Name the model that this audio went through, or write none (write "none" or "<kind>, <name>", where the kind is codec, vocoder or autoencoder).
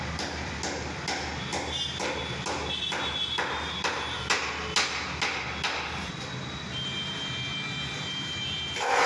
none